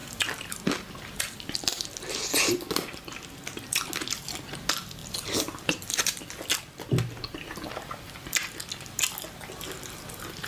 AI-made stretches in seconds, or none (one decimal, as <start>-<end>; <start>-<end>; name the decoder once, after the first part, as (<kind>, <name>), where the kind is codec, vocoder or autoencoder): none

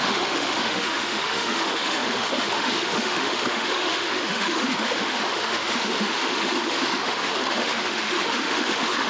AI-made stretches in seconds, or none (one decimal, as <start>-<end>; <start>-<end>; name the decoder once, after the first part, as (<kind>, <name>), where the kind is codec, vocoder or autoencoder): 0.0-9.1 (autoencoder, DAC-VAE)

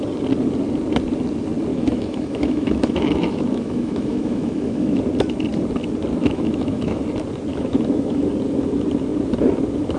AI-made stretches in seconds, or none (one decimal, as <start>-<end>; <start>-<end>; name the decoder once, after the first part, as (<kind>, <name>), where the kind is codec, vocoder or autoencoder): 1.7-5.0 (autoencoder, DAC-VAE); 6.2-7.0; 7.5-8.3

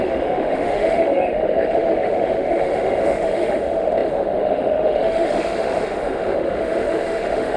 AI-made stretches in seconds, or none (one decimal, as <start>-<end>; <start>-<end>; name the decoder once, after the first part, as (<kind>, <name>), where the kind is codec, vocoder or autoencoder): 0.0-7.6 (autoencoder, DAC-VAE)

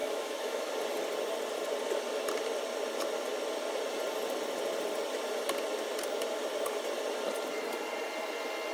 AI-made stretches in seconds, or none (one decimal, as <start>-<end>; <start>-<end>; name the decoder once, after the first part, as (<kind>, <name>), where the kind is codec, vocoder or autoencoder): 0.0-0.7 (autoencoder, DAC-VAE)

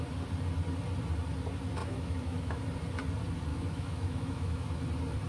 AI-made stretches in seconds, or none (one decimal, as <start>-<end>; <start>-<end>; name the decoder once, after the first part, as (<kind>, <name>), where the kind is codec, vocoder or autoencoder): 1.8-2.6 (autoencoder, DAC-VAE); 3.5-4.8